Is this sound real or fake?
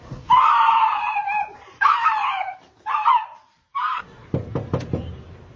fake